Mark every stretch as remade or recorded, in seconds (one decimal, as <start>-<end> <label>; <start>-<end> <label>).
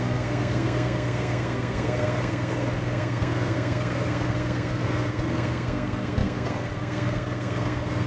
0.0-8.1 remade